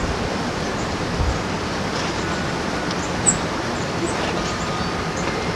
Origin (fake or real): real